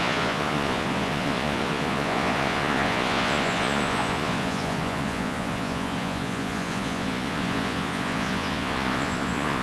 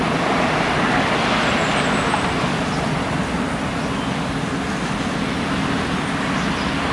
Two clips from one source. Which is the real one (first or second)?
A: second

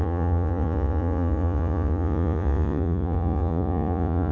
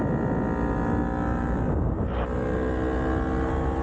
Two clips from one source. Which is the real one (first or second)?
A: second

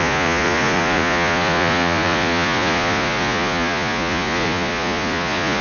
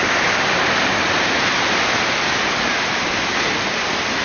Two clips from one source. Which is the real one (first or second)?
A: second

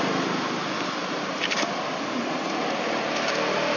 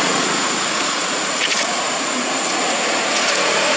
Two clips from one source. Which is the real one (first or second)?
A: first